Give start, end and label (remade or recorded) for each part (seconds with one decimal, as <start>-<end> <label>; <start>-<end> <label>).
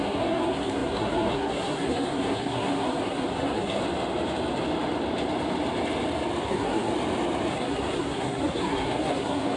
0.0-3.8 remade; 3.8-6.4 recorded; 6.4-6.9 remade; 6.9-7.5 recorded; 7.5-9.6 remade